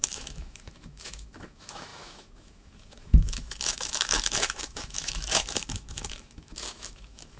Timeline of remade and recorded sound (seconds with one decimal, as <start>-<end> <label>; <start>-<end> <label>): 0.0-7.4 remade